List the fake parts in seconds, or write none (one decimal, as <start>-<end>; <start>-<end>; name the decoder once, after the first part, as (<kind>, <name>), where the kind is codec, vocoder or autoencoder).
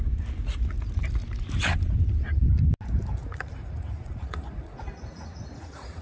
3.2-6.0 (vocoder, Vocos)